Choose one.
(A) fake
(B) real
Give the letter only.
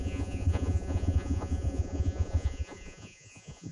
A